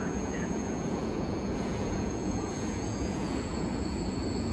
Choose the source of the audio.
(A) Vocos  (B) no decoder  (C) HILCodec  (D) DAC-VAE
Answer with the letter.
A